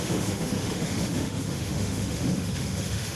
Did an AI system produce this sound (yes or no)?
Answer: yes